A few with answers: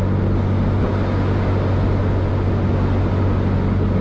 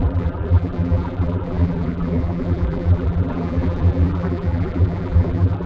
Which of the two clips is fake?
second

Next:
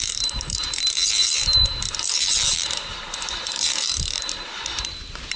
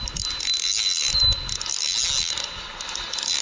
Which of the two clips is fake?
first